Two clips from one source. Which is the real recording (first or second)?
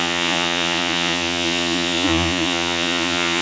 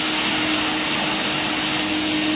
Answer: second